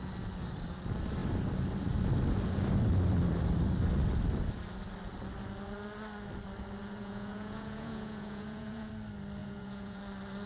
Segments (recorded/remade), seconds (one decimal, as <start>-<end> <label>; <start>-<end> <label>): 0.0-7.0 recorded; 7.0-8.9 remade; 8.9-9.4 recorded; 9.4-10.0 remade; 10.0-10.5 recorded